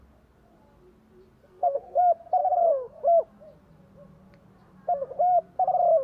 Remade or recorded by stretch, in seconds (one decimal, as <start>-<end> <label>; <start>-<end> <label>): 0.0-1.4 recorded; 1.4-2.0 remade; 2.0-2.4 recorded; 2.4-3.0 remade; 3.0-6.0 recorded